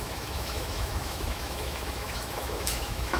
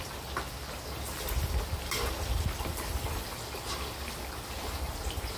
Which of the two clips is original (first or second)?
second